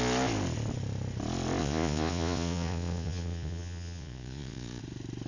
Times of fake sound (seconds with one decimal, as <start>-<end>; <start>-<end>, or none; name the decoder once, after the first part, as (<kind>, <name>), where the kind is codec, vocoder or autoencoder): 1.6-4.8 (vocoder, Vocos)

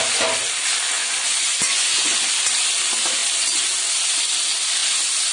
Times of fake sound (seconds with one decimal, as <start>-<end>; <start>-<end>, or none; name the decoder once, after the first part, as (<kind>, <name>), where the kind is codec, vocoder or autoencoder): 1.0-2.3 (vocoder, Vocos)